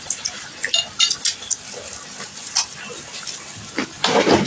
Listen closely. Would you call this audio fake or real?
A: real